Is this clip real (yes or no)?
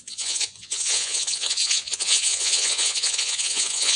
no